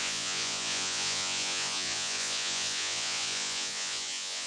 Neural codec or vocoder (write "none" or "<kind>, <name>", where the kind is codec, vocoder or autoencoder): vocoder, Vocos